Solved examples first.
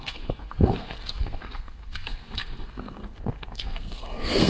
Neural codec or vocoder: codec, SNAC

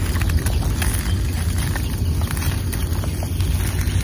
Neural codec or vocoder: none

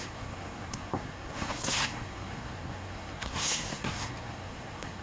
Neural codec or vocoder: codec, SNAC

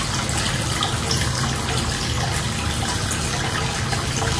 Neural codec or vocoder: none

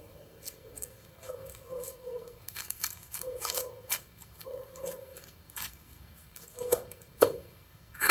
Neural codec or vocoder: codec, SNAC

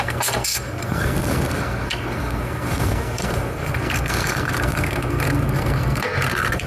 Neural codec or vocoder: codec, SNAC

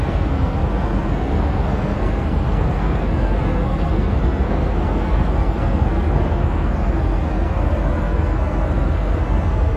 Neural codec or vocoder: codec, SNAC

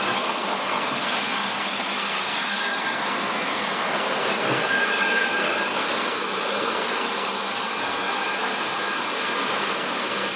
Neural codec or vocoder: codec, SNAC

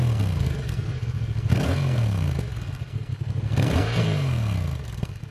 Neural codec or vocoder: codec, SNAC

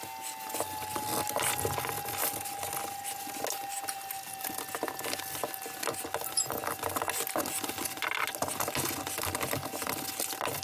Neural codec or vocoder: none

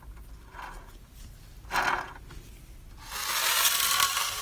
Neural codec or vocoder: none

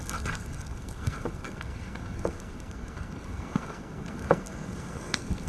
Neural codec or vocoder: codec, SNAC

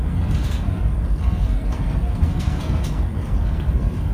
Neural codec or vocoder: codec, SNAC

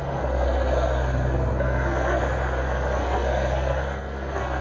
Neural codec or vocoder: codec, SNAC